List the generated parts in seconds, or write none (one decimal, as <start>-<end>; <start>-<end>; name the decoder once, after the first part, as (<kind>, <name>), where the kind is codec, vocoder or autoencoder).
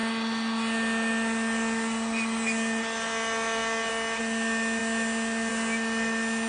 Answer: none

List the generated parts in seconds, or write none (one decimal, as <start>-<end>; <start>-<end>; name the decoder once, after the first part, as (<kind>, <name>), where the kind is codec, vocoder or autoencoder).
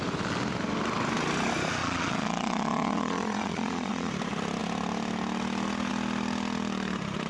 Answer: 1.8-4.1 (vocoder, Vocos)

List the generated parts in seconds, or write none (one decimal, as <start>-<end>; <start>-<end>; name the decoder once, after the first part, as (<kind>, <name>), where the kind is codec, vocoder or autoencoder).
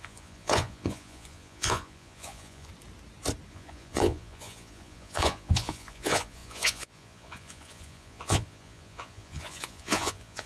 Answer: 0.0-2.7 (vocoder, Vocos); 3.5-10.5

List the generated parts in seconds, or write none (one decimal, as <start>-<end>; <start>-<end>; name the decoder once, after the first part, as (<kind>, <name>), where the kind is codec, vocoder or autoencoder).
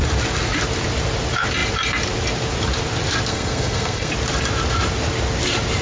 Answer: 3.3-4.1 (codec, SNAC)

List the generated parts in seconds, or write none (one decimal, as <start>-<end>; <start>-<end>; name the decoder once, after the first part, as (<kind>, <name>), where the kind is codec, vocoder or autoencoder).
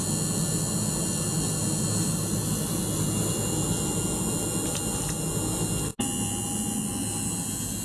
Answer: none